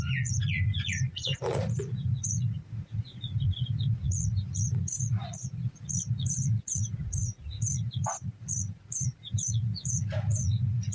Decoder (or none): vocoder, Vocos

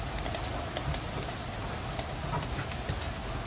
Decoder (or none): none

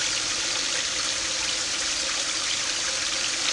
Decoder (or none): none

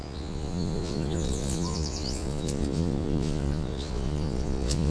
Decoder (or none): vocoder, Vocos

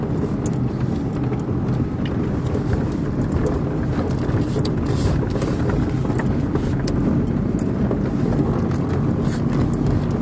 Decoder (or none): none